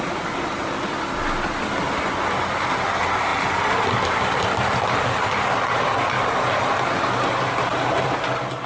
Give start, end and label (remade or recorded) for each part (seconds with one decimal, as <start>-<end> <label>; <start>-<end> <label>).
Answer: 0.0-8.7 recorded